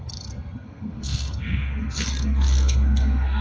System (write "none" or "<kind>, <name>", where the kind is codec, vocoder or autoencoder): codec, SNAC